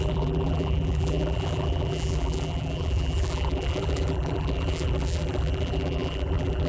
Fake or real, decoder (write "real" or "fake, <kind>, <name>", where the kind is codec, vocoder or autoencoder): fake, vocoder, BigVGAN v2